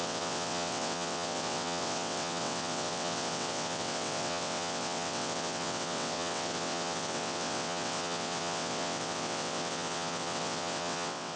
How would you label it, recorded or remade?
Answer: remade